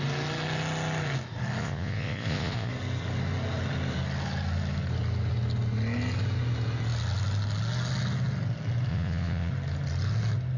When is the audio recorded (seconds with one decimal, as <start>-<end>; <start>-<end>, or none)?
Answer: 0.0-1.6; 2.7-8.9; 9.5-10.6